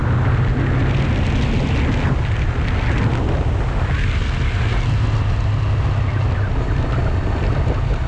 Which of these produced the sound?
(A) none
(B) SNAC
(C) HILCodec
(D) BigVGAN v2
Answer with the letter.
A